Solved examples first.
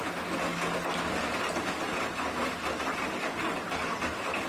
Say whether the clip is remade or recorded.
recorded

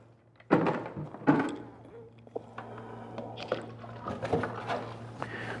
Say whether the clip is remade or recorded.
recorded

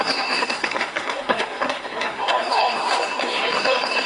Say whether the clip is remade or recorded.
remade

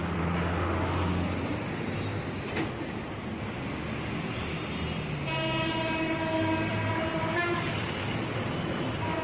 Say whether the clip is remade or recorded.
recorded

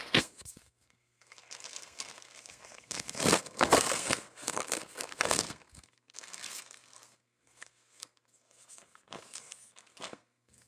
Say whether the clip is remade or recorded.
remade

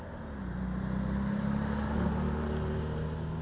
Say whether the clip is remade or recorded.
recorded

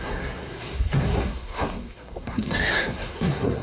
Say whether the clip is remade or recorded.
remade